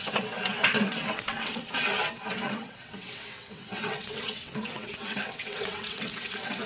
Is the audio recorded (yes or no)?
no